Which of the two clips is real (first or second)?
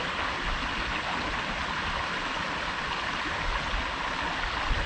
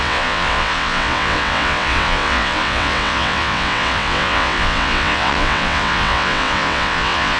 first